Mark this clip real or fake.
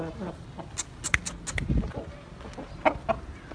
real